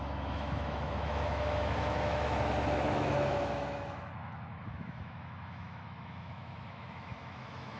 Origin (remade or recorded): remade